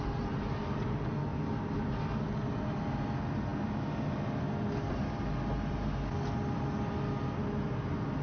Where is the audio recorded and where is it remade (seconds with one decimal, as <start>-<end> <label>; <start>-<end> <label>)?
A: 0.0-8.2 recorded